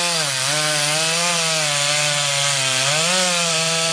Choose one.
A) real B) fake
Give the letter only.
A